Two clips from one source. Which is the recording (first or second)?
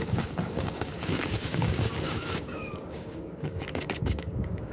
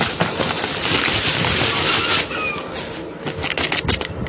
second